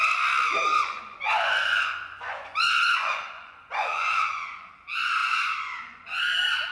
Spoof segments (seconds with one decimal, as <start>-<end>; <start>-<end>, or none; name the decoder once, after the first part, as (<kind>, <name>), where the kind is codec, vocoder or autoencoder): 0.7-4.7 (vocoder, Vocos); 5.2-6.2